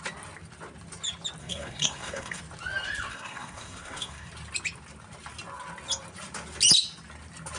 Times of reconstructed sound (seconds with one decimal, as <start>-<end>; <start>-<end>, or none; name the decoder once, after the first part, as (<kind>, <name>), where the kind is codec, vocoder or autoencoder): 1.4-2.4 (codec, SNAC); 3.1-4.3